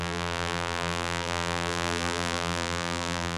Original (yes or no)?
no